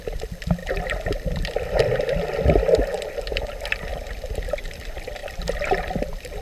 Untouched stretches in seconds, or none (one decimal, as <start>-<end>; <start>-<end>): 0.0-6.4